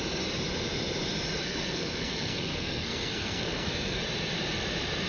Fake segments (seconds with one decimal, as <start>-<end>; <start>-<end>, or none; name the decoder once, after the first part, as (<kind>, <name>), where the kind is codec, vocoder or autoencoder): 1.4-4.0 (codec, SNAC)

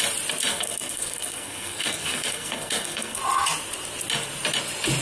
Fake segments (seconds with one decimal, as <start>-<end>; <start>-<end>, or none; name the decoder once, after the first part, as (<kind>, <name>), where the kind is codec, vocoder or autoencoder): 0.5-3.2 (codec, SNAC)